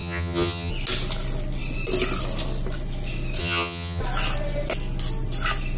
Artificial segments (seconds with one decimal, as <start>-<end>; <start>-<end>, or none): 0.0-0.7; 3.4-4.0